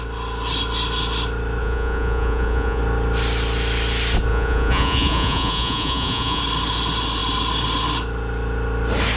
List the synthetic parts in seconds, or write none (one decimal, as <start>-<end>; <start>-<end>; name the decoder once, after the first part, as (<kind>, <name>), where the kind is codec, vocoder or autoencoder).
1.6-2.8 (vocoder, Vocos); 4.3-6.4